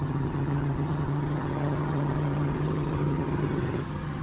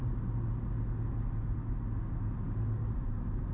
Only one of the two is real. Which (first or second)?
second